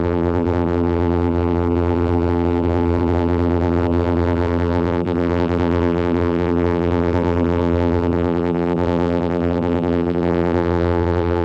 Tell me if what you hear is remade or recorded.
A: remade